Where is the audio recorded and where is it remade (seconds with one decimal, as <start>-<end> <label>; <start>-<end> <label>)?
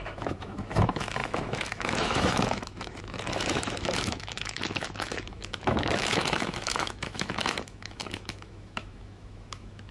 0.0-9.9 remade